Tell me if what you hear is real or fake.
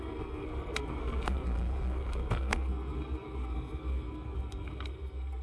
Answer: fake